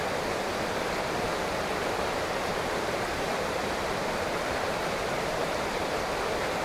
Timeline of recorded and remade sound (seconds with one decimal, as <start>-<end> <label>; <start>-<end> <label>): 0.0-1.8 recorded; 1.8-5.8 remade; 5.8-6.6 recorded